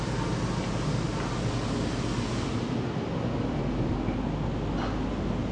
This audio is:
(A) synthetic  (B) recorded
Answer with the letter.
B